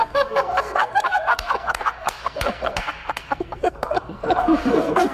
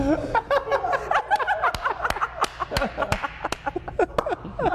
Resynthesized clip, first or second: first